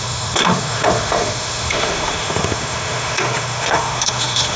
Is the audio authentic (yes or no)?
no